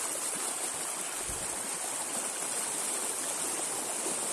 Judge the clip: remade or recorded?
recorded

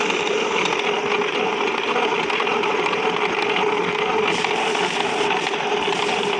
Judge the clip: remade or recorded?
recorded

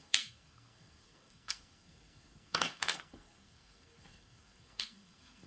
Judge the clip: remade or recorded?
remade